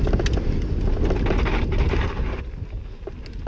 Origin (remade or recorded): recorded